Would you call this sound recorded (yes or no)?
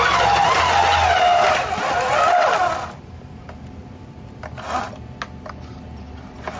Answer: yes